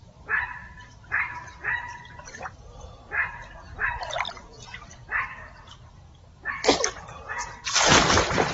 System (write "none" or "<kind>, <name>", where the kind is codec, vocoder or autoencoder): none